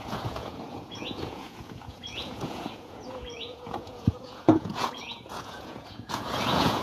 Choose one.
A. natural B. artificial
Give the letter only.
B